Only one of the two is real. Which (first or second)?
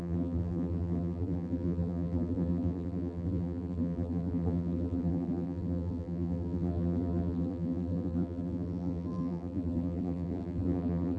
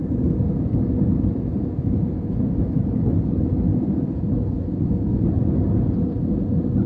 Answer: second